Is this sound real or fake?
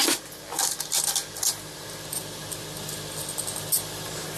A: real